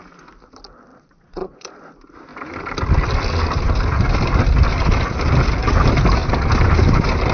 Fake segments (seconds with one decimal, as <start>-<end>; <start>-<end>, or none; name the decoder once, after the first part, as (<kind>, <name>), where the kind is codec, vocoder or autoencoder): 0.9-1.8 (vocoder, Vocos)